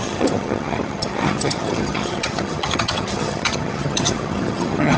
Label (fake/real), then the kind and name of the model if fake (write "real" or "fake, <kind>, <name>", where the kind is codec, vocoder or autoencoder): fake, vocoder, HiFi-GAN